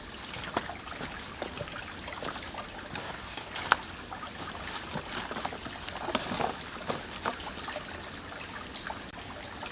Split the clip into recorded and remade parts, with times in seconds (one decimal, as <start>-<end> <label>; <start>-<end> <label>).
0.0-3.0 recorded; 3.0-3.5 remade; 3.5-9.7 recorded